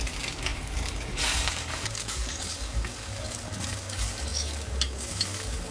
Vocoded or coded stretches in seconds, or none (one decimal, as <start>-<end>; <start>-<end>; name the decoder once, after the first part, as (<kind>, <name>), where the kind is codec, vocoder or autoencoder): 0.0-5.7 (codec, DAC)